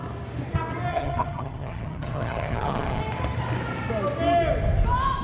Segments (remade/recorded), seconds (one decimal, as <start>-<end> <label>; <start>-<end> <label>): 0.0-0.9 recorded; 0.9-3.0 remade; 3.0-5.2 recorded